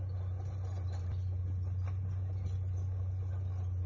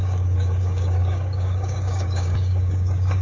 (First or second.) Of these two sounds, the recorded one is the first